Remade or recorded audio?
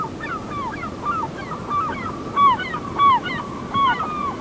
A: recorded